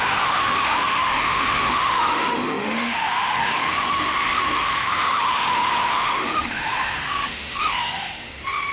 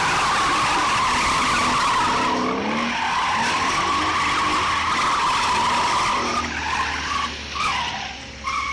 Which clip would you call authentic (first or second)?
second